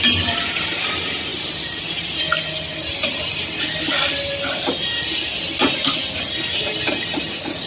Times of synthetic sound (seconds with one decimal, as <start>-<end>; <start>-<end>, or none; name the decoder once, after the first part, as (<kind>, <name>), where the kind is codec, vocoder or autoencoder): 1.3-5.2 (vocoder, BigVGAN v2)